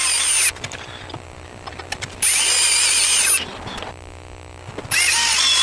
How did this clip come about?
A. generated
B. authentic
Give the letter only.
B